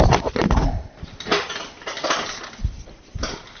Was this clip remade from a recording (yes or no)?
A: no